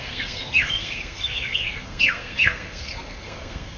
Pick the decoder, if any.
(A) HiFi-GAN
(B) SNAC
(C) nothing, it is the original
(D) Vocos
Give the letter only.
B